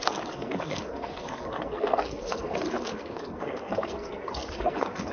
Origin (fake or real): fake